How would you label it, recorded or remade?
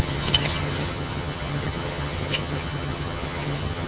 remade